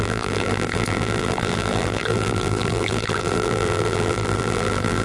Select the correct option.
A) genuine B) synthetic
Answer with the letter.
B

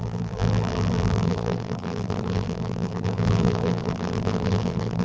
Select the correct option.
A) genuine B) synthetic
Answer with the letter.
B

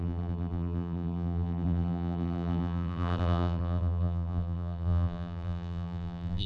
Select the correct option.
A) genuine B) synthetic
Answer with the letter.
B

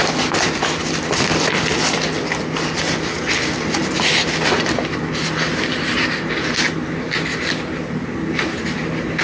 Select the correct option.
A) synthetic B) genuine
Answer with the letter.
B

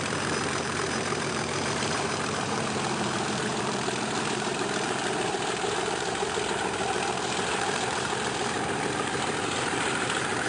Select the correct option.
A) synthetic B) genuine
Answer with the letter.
A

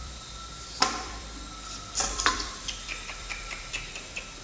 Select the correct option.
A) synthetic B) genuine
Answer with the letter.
A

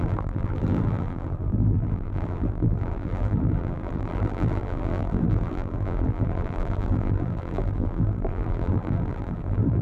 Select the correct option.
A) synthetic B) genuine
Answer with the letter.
A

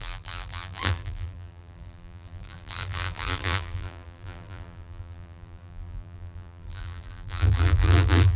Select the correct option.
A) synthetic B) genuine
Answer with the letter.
A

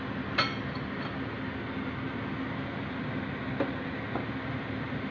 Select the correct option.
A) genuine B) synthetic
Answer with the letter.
A